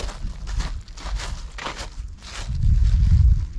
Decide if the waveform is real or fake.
real